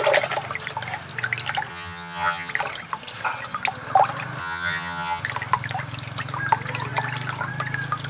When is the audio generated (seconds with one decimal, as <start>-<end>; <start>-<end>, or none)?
1.7-2.5; 4.4-5.2